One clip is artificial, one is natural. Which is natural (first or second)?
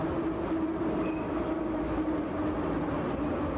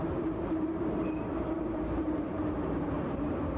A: first